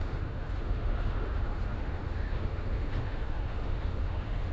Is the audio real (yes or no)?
no